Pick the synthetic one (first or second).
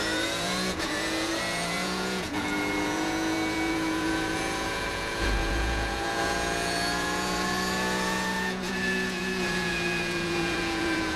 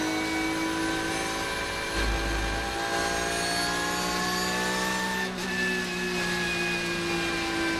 first